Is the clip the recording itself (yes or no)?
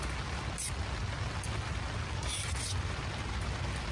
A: yes